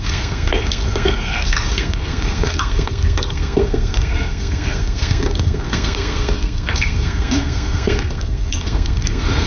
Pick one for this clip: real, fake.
fake